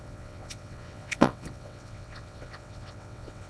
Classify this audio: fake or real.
fake